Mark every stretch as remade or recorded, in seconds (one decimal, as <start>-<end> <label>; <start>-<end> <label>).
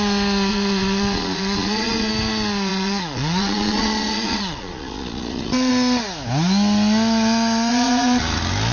0.0-0.5 recorded; 0.5-2.1 remade; 2.1-2.7 recorded; 2.7-5.7 remade; 5.7-7.7 recorded; 7.7-8.2 remade; 8.2-8.7 recorded